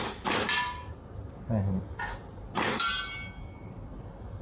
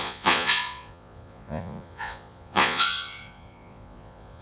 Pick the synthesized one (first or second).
second